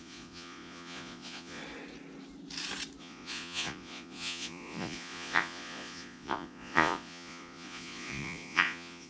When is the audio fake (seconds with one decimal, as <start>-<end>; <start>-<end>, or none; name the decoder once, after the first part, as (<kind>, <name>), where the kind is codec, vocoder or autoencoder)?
0.0-1.6 (vocoder, Vocos); 3.0-9.1